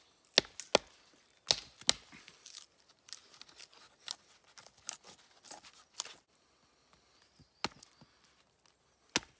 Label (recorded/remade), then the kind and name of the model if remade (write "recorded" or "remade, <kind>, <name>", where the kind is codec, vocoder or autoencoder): recorded